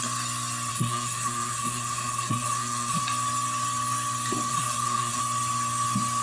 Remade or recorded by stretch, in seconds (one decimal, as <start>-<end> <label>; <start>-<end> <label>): 0.0-0.7 recorded; 0.7-3.0 remade; 3.0-4.5 recorded; 4.5-5.2 remade; 5.2-6.2 recorded